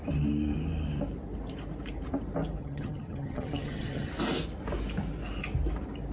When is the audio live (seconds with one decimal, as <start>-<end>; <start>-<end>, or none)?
0.0-2.6; 4.1-6.1